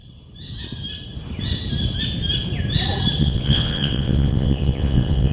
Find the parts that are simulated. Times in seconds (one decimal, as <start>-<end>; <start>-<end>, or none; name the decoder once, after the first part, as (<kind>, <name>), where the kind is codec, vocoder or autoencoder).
3.2-5.3 (vocoder, WaveNeXt)